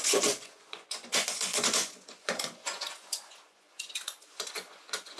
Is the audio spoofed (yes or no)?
yes